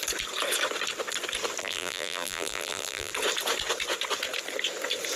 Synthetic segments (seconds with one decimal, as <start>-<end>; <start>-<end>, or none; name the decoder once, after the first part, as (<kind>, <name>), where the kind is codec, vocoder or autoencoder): 1.6-3.1 (vocoder, BigVGAN v2)